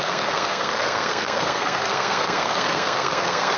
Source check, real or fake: fake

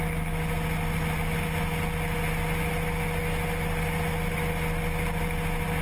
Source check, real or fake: real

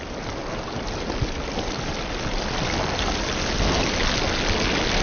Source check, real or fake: real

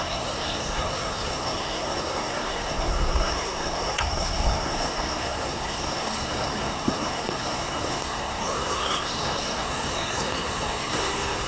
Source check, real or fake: fake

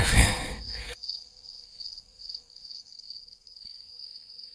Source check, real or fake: fake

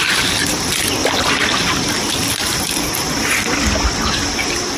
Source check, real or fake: real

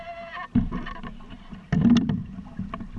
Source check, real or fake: fake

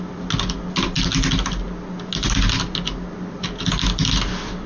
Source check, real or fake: real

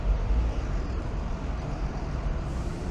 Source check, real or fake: fake